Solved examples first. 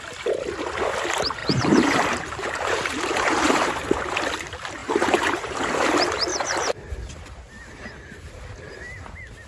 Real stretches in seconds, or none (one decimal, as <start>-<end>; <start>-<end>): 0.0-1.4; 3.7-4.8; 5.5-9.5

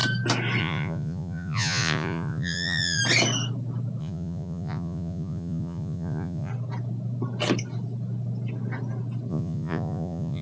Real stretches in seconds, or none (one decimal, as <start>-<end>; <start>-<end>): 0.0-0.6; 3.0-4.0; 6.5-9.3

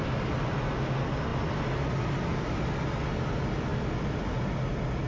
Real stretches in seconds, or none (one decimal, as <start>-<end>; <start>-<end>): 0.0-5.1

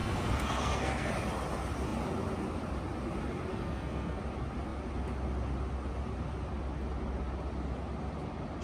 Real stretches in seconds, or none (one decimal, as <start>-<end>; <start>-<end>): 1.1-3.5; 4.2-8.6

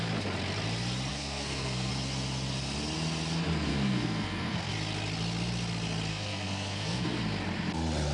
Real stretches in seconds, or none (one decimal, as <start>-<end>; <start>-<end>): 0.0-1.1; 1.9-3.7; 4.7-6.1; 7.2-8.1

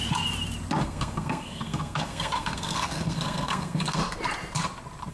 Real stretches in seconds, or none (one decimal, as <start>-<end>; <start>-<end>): 0.0-0.8; 4.0-5.1

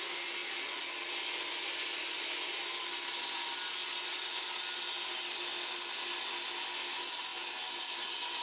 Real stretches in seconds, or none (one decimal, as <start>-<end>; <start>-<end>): 0.0-0.4; 1.1-8.4

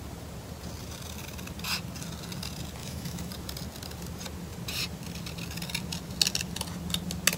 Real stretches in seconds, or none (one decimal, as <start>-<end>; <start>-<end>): 0.0-2.8; 3.3-7.4